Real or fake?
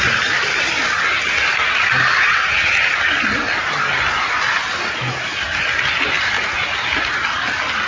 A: real